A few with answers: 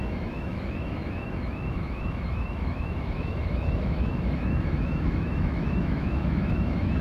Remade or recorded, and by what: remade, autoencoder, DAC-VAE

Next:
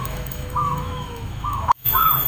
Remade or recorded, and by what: remade, autoencoder, DAC-VAE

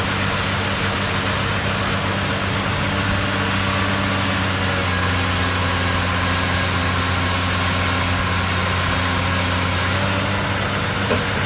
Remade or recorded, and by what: recorded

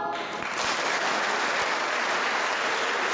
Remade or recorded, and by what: recorded